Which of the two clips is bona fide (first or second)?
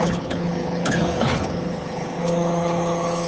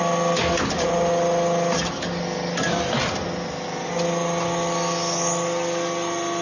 second